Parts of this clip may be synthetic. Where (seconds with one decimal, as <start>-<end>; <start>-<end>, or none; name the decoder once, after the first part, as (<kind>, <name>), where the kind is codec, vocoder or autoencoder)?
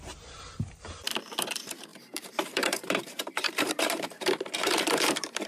0.0-5.5 (vocoder, BigVGAN v2)